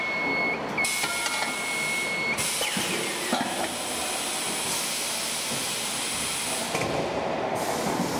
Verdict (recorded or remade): recorded